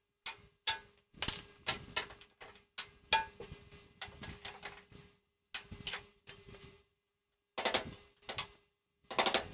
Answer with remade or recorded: recorded